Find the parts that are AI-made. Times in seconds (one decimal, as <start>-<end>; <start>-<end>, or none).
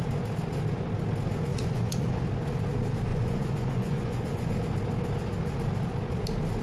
1.5-2.2; 3.1-4.5